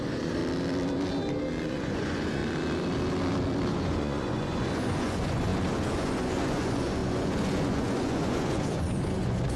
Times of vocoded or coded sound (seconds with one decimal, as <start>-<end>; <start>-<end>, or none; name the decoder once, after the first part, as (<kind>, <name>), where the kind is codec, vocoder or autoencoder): 0.0-0.4 (vocoder, Vocos); 1.7-2.4; 3.7-9.6